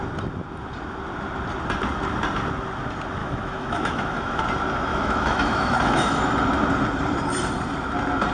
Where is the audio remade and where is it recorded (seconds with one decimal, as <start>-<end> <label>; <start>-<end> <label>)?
0.0-3.2 recorded; 3.2-4.4 remade; 4.4-4.9 recorded; 4.9-6.2 remade; 6.2-8.3 recorded